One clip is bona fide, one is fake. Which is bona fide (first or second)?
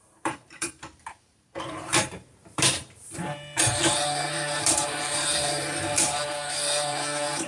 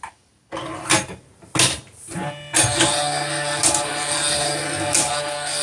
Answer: second